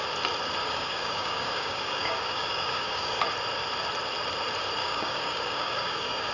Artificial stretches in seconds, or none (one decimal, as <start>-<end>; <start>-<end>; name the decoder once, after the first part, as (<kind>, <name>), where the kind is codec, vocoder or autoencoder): 0.6-3.2 (codec, DAC); 4.8-6.3